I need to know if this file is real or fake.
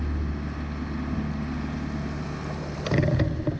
real